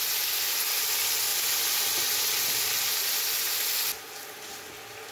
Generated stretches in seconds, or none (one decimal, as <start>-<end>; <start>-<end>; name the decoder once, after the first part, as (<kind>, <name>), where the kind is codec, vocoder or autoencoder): 1.3-2.9 (vocoder, BigVGAN v2)